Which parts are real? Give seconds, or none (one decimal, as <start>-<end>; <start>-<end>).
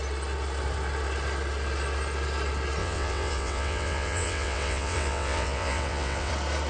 0.0-2.8; 6.3-6.7